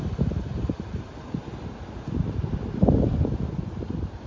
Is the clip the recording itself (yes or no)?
yes